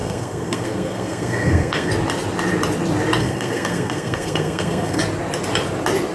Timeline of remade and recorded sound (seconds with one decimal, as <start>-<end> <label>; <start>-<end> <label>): 0.0-1.9 remade; 1.9-3.2 recorded; 3.2-5.0 remade; 5.0-6.1 recorded